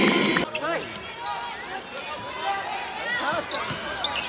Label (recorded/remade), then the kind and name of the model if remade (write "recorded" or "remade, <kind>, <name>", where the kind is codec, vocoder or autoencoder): recorded